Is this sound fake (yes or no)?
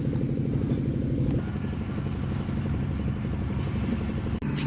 no